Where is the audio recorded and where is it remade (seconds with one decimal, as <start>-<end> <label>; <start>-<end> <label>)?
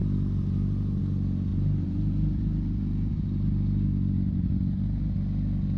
0.0-1.0 remade; 1.0-1.5 recorded; 1.5-5.0 remade; 5.0-5.8 recorded